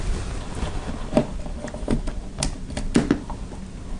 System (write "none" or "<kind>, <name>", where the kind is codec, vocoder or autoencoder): none